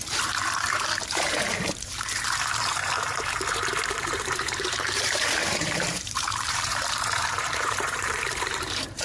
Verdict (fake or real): fake